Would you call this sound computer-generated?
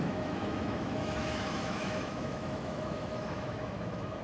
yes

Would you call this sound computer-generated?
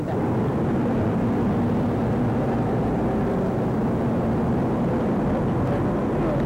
no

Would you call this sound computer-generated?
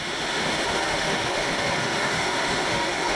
yes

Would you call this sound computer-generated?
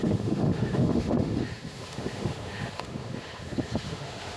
yes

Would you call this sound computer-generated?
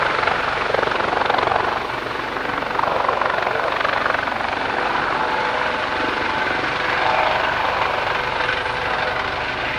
no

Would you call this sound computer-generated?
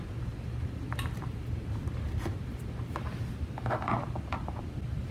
no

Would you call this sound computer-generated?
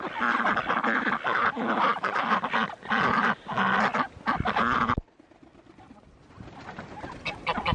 no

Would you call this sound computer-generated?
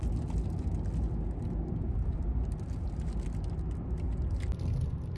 no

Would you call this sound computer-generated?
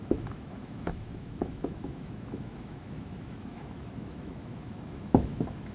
yes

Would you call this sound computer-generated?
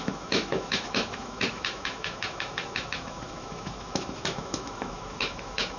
yes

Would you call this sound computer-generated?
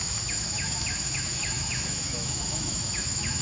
yes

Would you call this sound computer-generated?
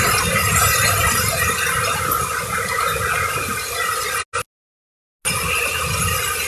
no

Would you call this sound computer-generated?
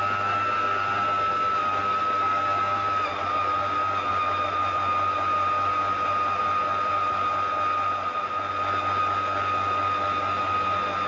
no